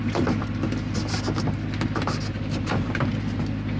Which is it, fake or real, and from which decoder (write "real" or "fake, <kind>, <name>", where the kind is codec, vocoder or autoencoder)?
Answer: real